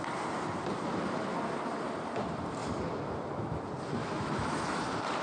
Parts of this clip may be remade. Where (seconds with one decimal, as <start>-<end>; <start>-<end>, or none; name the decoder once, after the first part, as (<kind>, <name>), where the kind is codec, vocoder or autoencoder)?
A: 4.0-4.8 (autoencoder, DAC-VAE)